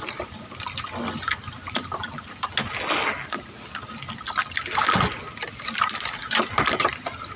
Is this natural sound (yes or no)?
yes